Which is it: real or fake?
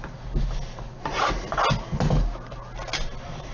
real